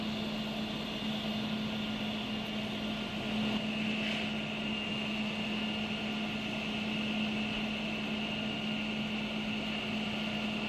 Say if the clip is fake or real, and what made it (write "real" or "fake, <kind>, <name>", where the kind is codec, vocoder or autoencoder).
real